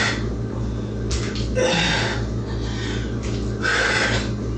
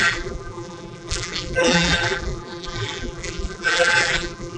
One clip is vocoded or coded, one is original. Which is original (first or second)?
first